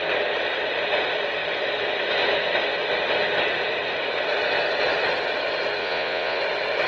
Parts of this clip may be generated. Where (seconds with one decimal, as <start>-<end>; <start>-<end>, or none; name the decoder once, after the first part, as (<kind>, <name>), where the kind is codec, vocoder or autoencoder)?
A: 5.8-6.4 (vocoder, Vocos)